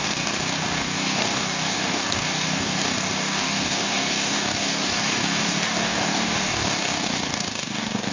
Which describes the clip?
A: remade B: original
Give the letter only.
A